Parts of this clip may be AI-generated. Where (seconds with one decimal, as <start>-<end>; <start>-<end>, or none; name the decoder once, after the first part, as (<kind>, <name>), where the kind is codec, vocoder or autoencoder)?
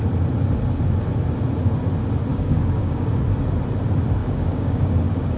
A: 2.3-3.2 (codec, DAC); 4.2-5.4